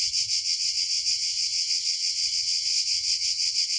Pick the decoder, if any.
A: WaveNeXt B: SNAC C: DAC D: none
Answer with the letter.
A